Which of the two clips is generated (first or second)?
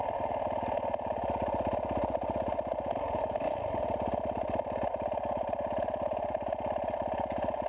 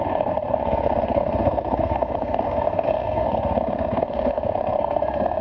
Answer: second